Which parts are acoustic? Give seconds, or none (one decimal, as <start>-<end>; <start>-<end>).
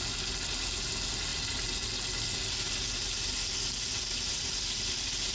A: 0.0-5.3